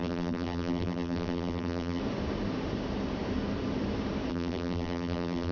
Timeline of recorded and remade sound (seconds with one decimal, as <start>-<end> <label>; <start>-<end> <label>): 0.0-2.0 remade; 2.0-4.3 recorded; 4.3-5.5 remade